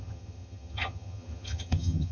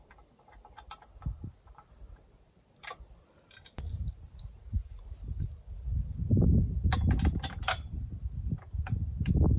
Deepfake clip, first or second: first